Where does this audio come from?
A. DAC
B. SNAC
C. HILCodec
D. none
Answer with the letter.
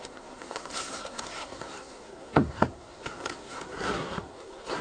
B